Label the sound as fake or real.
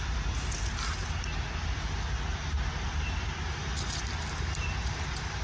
real